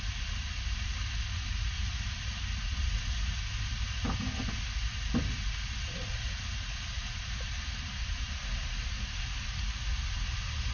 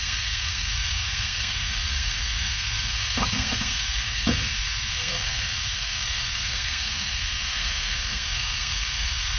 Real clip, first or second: first